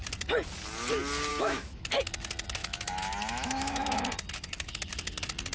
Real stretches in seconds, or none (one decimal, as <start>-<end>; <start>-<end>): 0.0-1.3; 1.8-2.6; 4.0-5.5